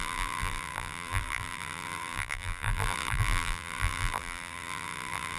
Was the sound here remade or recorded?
remade